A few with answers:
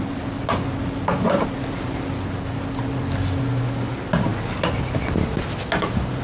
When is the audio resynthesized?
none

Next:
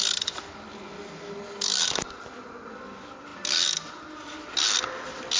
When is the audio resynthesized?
none

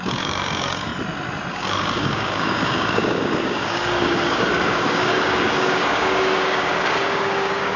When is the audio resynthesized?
0.0-0.9 (codec, DAC); 1.5-7.8

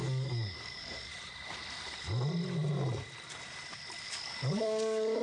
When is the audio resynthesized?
0.0-1.1 (codec, DAC); 4.0-5.2

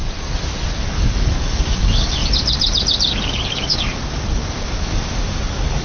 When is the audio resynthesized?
0.8-2.2 (codec, DAC); 3.1-5.8